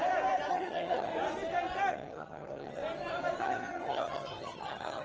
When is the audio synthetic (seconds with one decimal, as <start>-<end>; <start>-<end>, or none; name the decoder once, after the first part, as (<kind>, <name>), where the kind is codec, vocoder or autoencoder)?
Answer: 0.5-1.1 (vocoder, HiFi-GAN); 1.9-2.8; 3.4-5.0